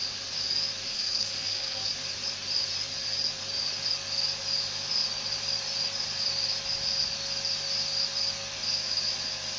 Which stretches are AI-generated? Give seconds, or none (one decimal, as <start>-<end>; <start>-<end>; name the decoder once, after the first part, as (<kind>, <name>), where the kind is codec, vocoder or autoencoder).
0.9-1.9 (codec, SNAC)